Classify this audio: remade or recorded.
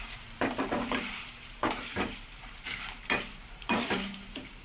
remade